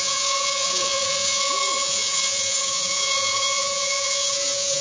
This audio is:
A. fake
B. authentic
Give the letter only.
A